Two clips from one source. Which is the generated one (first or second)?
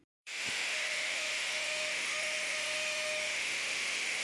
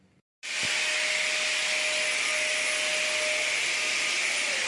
first